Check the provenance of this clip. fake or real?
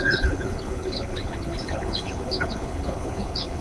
fake